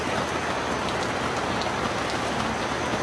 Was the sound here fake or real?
real